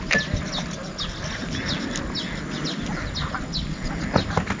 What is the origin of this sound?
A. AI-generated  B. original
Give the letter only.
B